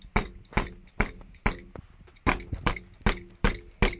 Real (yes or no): yes